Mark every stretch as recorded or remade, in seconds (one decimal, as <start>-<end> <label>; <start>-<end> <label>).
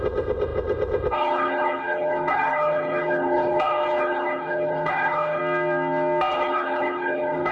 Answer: 0.0-5.4 remade; 5.4-6.3 recorded; 6.3-7.5 remade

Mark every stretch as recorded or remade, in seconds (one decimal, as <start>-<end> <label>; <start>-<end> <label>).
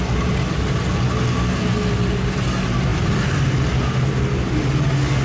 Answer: 0.0-5.2 recorded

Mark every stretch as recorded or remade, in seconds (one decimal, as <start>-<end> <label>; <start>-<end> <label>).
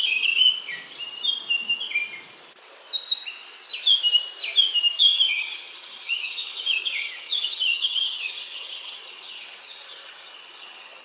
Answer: 0.0-0.4 remade; 0.4-5.0 recorded; 5.0-11.0 remade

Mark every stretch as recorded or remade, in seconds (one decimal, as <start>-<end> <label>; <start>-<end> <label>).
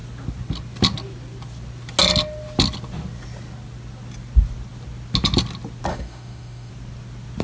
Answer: 0.0-5.9 recorded; 5.9-6.7 remade; 6.7-7.4 recorded